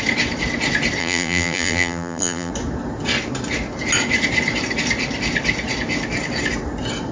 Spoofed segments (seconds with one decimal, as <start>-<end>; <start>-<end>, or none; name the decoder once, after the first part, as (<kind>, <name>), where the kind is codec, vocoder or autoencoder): 1.0-2.5 (vocoder, BigVGAN v2)